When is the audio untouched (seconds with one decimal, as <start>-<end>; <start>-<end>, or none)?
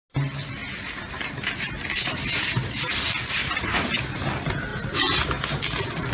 0.0-0.6; 2.0-3.4; 3.9-6.1